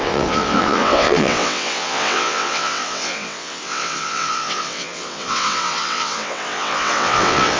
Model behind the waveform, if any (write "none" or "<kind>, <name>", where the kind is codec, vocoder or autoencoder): vocoder, WaveNeXt